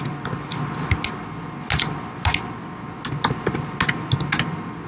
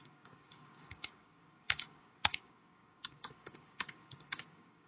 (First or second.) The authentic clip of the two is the first